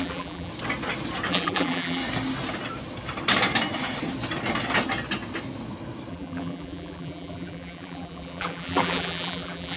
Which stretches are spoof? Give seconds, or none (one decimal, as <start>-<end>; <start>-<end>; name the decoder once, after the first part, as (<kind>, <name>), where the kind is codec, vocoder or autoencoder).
0.0-0.5 (vocoder, BigVGAN v2); 1.3-2.0; 6.1-9.8